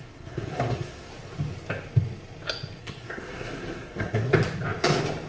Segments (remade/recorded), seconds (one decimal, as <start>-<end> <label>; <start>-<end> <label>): 0.0-1.1 remade; 1.1-2.8 recorded; 2.8-4.3 remade; 4.3-5.3 recorded